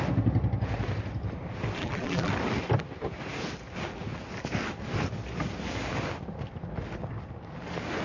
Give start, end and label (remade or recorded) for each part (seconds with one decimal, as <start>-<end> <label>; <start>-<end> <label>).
0.0-1.8 recorded; 1.8-2.3 remade; 2.3-8.0 recorded